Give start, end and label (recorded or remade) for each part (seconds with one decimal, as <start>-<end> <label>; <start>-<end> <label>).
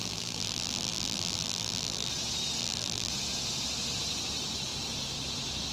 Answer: 0.0-2.1 remade; 2.1-2.6 recorded; 2.6-3.1 remade; 3.1-5.7 recorded